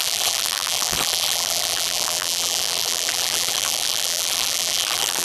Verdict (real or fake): fake